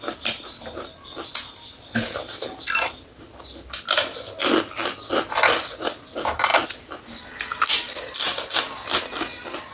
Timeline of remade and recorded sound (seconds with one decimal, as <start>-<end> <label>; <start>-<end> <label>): 0.0-9.7 recorded